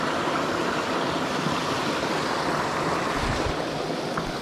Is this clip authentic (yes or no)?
yes